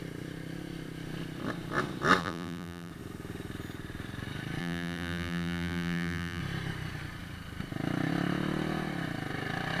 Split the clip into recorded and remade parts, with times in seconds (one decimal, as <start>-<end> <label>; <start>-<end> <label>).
0.0-2.2 recorded; 2.2-2.9 remade; 2.9-4.6 recorded; 4.6-6.4 remade; 6.4-9.8 recorded